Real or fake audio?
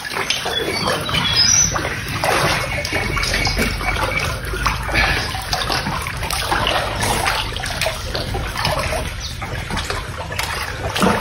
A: real